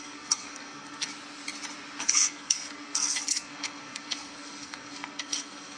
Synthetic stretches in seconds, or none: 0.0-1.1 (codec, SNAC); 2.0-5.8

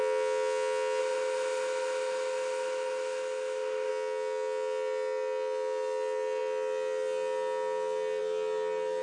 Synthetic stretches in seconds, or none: 1.0-3.9 (autoencoder, DAC-VAE)